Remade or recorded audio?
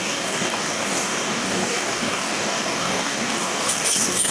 remade